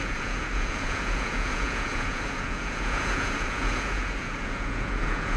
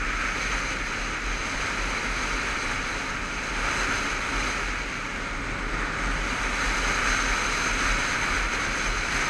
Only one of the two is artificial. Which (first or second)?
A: first